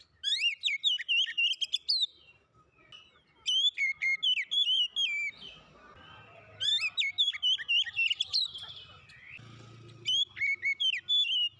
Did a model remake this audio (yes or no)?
no